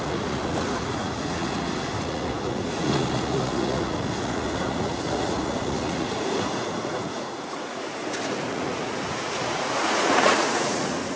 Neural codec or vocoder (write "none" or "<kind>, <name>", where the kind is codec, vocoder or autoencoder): vocoder, Vocos